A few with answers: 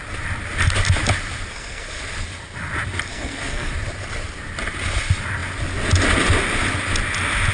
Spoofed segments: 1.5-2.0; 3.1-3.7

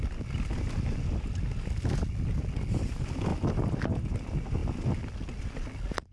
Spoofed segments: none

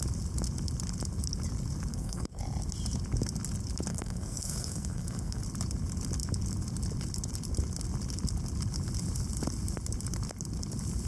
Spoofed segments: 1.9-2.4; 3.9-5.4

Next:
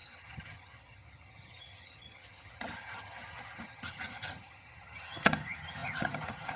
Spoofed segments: 0.0-6.6